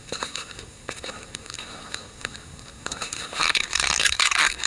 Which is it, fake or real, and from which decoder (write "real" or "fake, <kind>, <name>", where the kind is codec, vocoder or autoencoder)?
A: fake, codec, SNAC